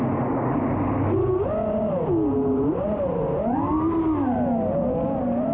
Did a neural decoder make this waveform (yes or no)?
no